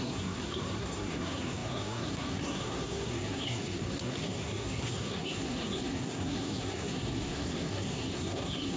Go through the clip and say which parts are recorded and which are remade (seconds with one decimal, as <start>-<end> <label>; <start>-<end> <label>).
0.0-8.8 remade